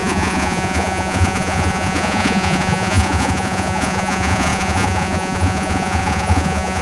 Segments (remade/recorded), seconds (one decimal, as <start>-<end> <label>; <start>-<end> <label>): 0.0-6.8 remade